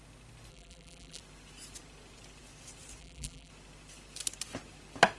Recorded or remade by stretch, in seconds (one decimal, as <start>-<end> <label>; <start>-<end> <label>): 0.0-0.5 recorded; 0.5-1.2 remade; 1.2-3.0 recorded; 3.0-3.5 remade; 3.5-5.2 recorded